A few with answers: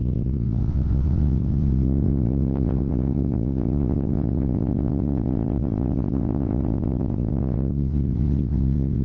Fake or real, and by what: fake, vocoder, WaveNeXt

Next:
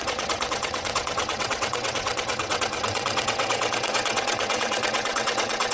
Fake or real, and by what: fake, vocoder, WaveNeXt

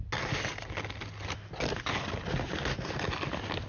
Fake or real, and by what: real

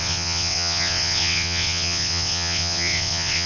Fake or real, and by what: fake, vocoder, WaveNeXt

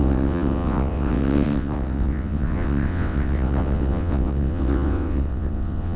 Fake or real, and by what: fake, vocoder, WaveNeXt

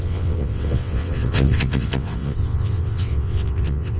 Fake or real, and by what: fake, vocoder, WaveNeXt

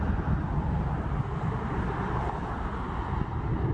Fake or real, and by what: real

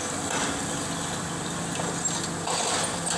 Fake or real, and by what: real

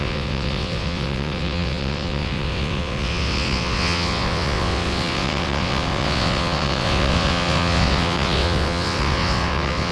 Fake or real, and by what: fake, vocoder, WaveNeXt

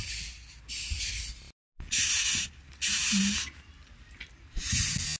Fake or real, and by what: real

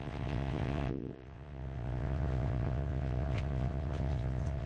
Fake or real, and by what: fake, vocoder, WaveNeXt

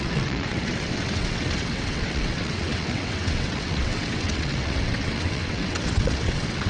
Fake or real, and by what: fake, vocoder, WaveNeXt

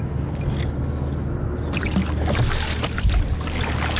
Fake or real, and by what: real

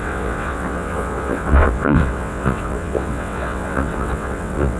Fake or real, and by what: fake, vocoder, WaveNeXt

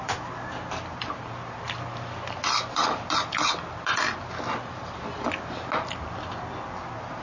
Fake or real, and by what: real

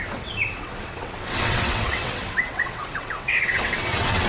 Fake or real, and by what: fake, vocoder, WaveNeXt